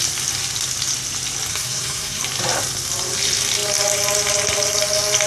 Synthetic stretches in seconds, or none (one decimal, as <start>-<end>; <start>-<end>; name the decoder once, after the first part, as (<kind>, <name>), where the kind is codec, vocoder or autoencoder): 1.5-2.2 (codec, SNAC)